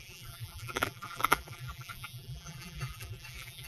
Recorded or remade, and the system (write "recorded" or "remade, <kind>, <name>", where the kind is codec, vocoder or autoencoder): remade, vocoder, BigVGAN v2